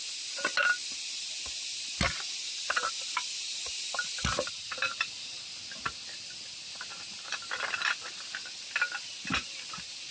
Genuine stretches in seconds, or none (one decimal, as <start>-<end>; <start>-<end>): 0.0-10.1